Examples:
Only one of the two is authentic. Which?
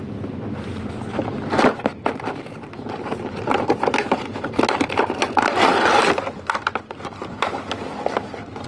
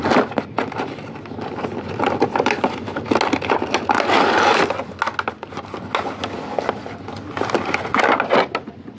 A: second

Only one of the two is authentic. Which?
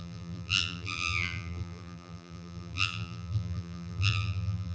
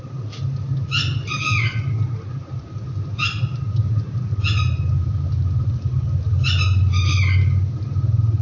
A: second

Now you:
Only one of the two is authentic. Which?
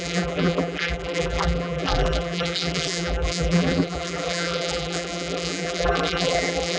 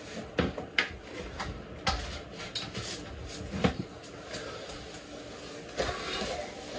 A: second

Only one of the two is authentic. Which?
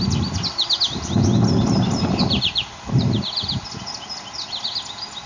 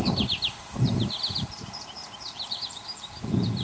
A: first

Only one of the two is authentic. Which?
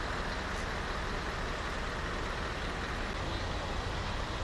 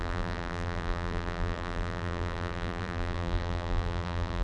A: first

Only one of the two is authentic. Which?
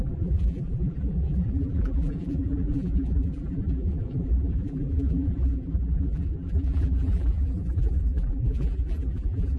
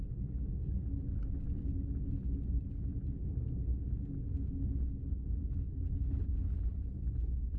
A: second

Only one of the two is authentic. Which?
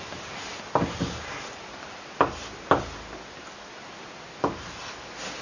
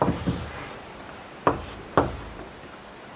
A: first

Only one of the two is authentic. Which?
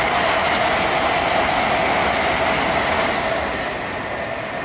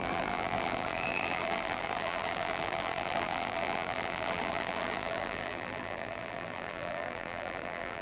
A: first